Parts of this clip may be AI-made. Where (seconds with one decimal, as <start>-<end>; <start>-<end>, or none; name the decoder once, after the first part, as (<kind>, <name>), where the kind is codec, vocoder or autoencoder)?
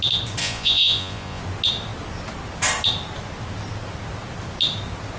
0.4-1.4 (vocoder, Vocos)